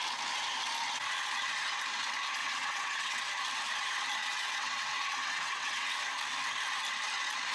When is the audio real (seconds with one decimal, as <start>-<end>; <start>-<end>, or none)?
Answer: 0.0-2.4; 3.2-4.2; 6.0-7.5